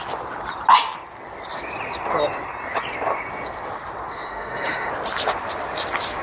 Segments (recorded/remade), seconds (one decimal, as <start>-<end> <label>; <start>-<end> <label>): 0.0-4.1 recorded; 4.1-4.9 remade; 4.9-6.2 recorded